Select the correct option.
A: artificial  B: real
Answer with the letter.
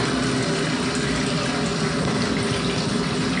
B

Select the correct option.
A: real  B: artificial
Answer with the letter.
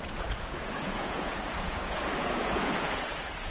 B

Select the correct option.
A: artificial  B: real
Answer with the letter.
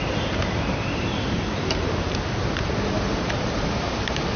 A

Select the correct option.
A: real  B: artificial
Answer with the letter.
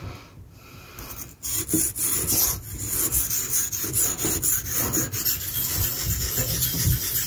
A